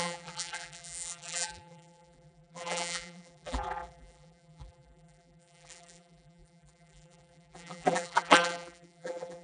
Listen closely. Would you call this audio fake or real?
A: fake